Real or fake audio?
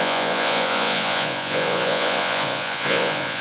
fake